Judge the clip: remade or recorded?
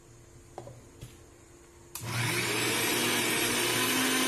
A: recorded